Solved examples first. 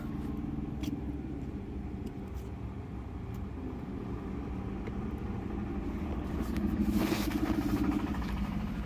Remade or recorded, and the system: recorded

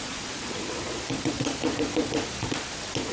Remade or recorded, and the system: remade, vocoder, Vocos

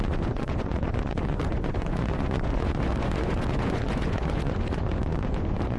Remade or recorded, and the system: remade, vocoder, Vocos